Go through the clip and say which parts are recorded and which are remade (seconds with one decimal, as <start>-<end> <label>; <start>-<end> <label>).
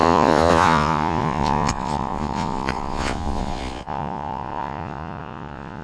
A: 0.0-5.8 remade